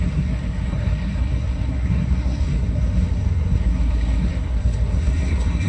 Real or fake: fake